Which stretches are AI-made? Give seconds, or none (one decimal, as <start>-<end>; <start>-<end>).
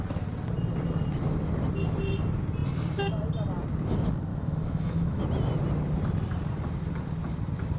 4.3-5.2